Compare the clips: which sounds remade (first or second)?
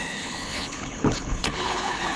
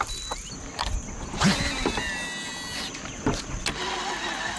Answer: first